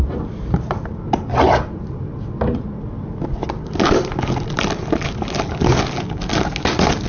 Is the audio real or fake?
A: real